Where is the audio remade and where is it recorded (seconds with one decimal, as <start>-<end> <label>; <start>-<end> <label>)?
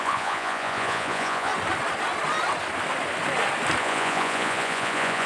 0.0-1.5 remade; 1.5-3.8 recorded; 3.8-5.3 remade